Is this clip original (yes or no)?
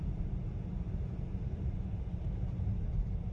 no